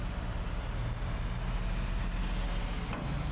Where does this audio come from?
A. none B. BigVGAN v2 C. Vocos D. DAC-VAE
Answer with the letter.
A